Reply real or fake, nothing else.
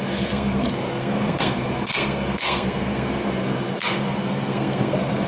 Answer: fake